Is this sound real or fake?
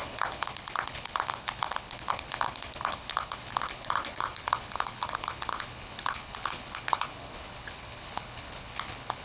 fake